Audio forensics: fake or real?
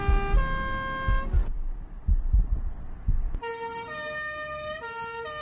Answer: real